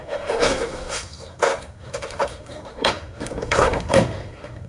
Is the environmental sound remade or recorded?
remade